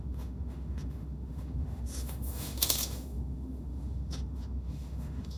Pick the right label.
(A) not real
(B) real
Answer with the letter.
A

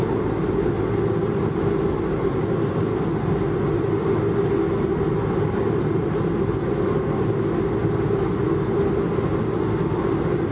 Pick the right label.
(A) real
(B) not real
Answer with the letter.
A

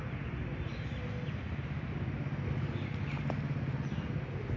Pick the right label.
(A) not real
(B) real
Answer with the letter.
B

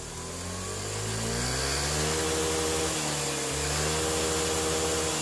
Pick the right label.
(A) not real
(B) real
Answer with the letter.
B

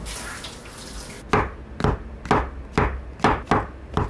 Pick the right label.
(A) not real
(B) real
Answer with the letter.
B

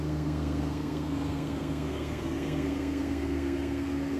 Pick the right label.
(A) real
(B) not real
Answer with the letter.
B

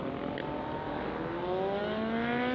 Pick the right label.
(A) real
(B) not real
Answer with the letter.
A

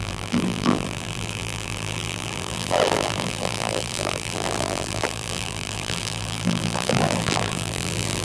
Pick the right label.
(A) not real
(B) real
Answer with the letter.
A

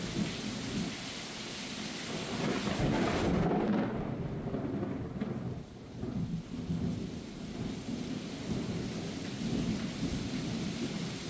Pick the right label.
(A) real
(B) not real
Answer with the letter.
A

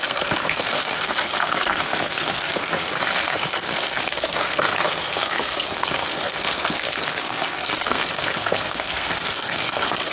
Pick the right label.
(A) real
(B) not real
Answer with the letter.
B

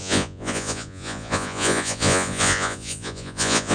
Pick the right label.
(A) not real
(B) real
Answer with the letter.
A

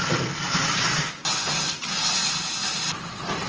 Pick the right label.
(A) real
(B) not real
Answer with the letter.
A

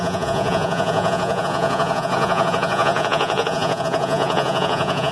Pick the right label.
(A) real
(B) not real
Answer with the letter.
B